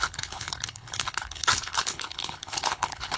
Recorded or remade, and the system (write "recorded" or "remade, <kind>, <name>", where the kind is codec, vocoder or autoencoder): remade, codec, HILCodec